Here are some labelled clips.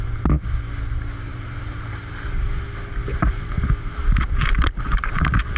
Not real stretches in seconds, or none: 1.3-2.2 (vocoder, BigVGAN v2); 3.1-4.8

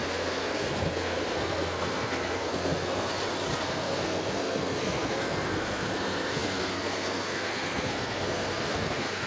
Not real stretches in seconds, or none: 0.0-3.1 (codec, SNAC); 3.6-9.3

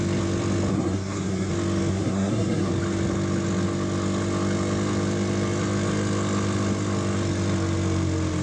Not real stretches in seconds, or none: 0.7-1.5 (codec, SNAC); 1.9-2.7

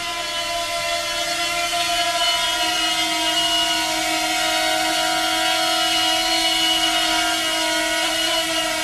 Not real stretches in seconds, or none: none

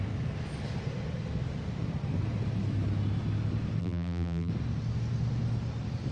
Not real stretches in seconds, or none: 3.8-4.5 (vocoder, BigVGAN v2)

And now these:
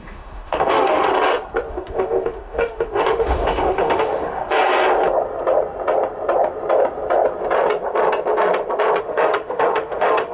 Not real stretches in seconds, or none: 0.0-1.1 (autoencoder, DAC-VAE); 1.7-4.4; 9.0-10.3